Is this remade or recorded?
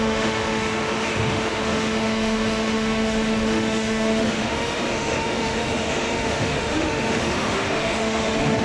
remade